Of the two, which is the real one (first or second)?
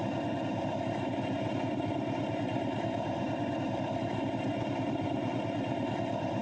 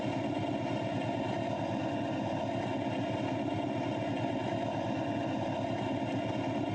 second